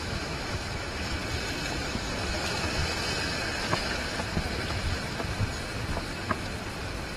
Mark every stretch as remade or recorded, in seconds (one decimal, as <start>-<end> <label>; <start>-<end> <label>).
0.0-1.2 remade; 1.2-1.8 recorded; 1.8-2.8 remade; 2.8-7.2 recorded